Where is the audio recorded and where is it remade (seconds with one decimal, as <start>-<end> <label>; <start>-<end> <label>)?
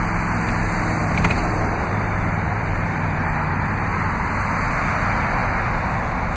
0.0-1.0 recorded; 1.0-4.5 remade; 4.5-6.4 recorded